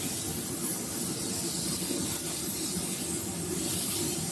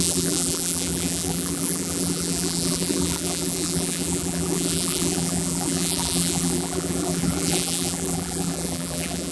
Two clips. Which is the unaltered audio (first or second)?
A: first